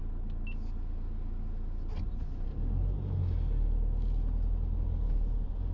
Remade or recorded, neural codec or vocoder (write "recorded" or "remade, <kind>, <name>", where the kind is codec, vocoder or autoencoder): recorded